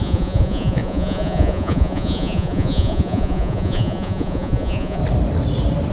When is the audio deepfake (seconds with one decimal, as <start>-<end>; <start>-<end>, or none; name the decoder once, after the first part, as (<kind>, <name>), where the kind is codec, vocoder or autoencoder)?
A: 0.0-5.0 (vocoder, Vocos)